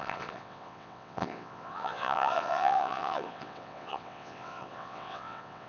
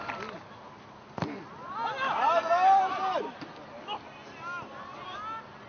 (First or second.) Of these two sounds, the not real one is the first